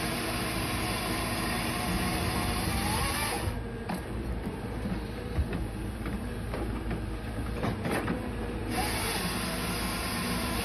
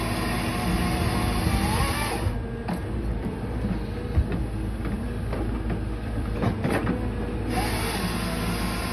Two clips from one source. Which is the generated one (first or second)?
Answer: first